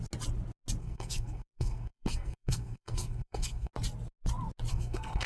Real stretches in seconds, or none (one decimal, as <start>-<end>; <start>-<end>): 0.0-0.8; 3.7-4.7